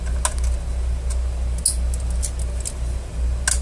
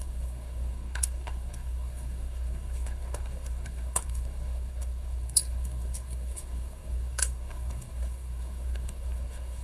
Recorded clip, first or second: first